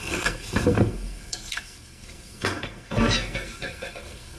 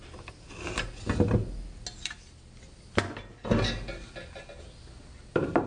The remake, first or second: first